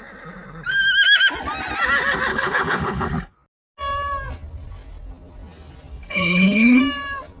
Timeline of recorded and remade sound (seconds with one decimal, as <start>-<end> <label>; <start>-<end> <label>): 0.0-2.3 recorded; 2.3-3.1 remade; 3.1-5.9 recorded; 5.9-6.8 remade; 6.8-7.4 recorded